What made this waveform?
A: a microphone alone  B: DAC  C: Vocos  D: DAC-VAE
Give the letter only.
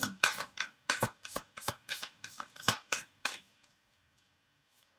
B